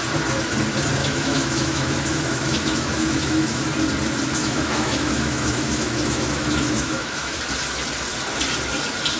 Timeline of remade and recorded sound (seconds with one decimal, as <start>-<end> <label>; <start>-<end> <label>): 0.0-1.0 recorded; 1.0-3.6 remade; 3.6-4.4 recorded; 4.4-7.4 remade; 7.4-9.2 recorded